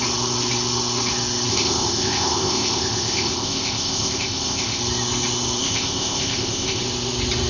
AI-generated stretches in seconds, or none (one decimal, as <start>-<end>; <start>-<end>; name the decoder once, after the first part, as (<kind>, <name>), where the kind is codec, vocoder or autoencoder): 1.5-4.8 (codec, ZipCodec); 5.6-6.8